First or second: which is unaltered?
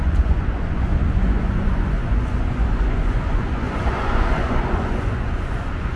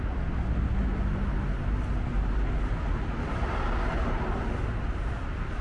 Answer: second